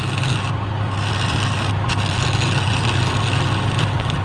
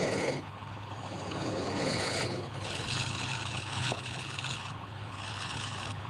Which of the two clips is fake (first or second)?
second